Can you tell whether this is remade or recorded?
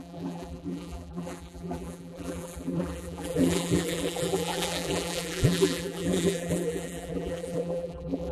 remade